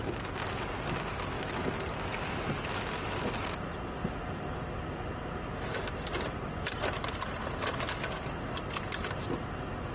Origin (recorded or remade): recorded